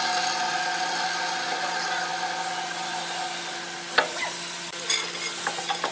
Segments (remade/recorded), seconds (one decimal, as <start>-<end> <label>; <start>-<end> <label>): 0.0-5.9 recorded

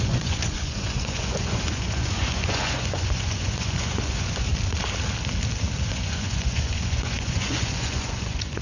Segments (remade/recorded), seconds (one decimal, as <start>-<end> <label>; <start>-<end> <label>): 0.0-4.5 remade; 4.5-5.8 recorded; 5.8-8.6 remade

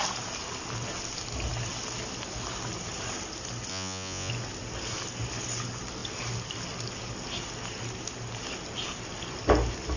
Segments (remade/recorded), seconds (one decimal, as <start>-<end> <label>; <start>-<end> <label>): 0.0-3.7 recorded; 3.7-4.3 remade; 4.3-10.0 recorded

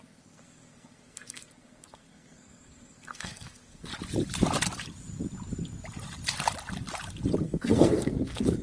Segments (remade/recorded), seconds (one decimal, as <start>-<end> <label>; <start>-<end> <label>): 0.0-3.9 remade; 3.9-7.4 recorded; 7.4-8.6 remade